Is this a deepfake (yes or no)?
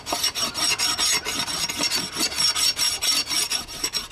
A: no